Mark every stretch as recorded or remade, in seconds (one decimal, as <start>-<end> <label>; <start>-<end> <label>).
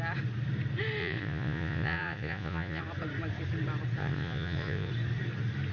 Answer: 0.0-1.0 recorded; 1.0-2.8 remade; 2.8-4.0 recorded; 4.0-4.9 remade; 4.9-5.7 recorded